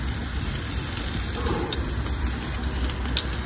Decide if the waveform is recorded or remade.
recorded